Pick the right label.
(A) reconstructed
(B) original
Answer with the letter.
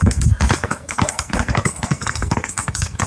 A